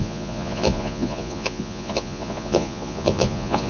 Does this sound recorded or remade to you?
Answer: remade